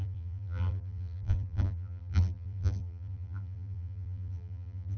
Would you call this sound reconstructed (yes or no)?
yes